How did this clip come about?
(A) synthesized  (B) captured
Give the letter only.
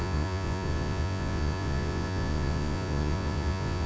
A